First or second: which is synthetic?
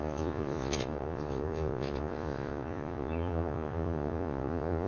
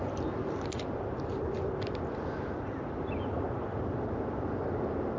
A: first